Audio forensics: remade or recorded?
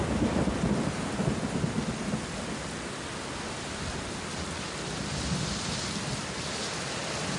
recorded